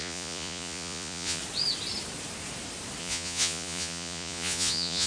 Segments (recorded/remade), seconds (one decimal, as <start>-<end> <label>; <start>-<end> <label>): 0.0-1.4 remade; 1.4-3.0 recorded; 3.0-5.1 remade